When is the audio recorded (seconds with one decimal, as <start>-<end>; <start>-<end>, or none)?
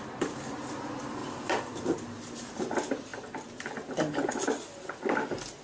0.0-5.6